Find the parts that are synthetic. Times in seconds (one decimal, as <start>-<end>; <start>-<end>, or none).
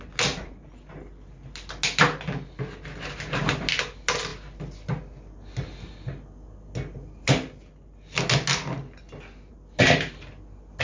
none